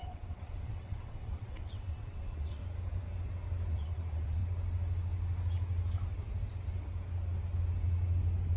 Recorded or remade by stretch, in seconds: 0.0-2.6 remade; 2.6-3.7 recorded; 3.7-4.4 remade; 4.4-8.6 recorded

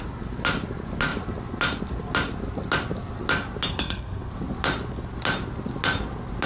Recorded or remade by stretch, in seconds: 0.0-3.7 recorded; 3.7-4.3 remade; 4.3-6.5 recorded

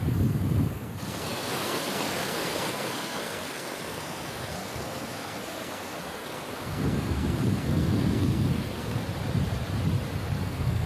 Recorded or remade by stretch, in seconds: 0.0-9.0 remade; 9.0-10.4 recorded; 10.4-10.9 remade

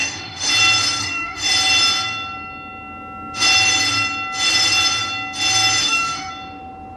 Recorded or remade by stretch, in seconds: 0.0-0.5 remade; 0.5-1.0 recorded; 1.0-1.5 remade; 1.5-5.8 recorded; 5.8-6.3 remade; 6.3-7.0 recorded

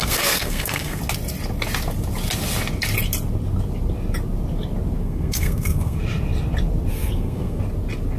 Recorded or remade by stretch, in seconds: 0.0-1.0 remade; 1.0-5.0 recorded; 5.0-6.0 remade; 6.0-6.9 recorded; 6.9-7.6 remade; 7.6-8.2 recorded

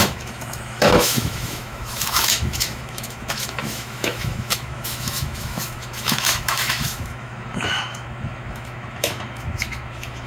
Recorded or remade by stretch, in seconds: 0.0-10.3 remade

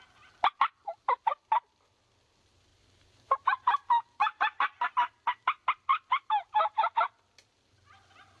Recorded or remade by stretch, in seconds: 0.0-2.7 recorded; 2.7-4.9 remade; 4.9-5.9 recorded; 5.9-6.9 remade; 6.9-8.4 recorded

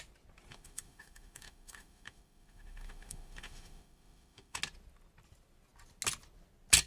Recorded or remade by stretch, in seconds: 0.0-0.5 recorded; 0.5-4.6 remade; 4.6-6.9 recorded